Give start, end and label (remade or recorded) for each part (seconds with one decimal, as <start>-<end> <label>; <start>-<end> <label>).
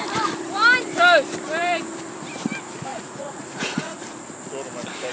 0.0-2.9 recorded; 2.9-4.0 remade; 4.0-5.1 recorded